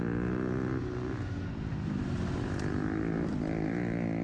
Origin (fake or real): real